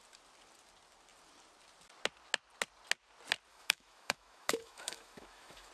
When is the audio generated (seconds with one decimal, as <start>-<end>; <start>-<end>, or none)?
3.5-5.7